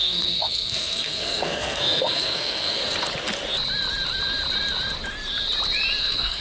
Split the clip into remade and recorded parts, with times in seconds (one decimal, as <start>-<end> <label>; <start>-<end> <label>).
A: 0.0-2.8 remade; 2.8-6.0 recorded; 6.0-6.4 remade